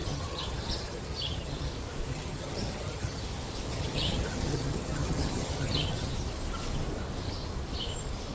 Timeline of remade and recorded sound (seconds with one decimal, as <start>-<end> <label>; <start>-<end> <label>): 0.0-1.7 remade; 1.7-2.1 recorded; 2.1-3.2 remade; 3.2-3.7 recorded; 3.7-6.1 remade; 6.1-8.3 recorded